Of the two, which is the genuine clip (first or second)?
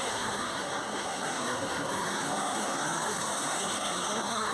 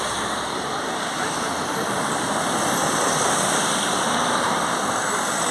second